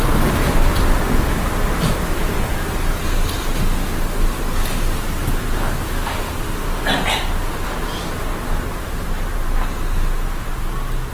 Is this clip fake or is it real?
real